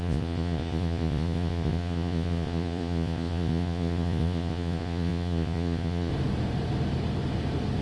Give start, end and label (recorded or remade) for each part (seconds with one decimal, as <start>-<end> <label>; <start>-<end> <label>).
0.0-6.1 remade; 6.1-7.8 recorded